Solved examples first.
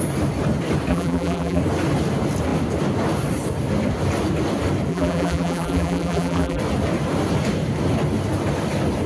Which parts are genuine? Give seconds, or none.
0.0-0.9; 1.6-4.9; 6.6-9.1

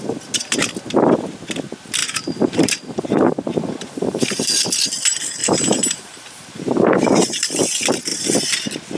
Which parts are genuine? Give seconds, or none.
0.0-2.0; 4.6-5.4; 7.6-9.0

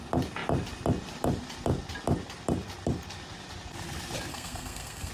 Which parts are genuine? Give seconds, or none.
0.0-4.3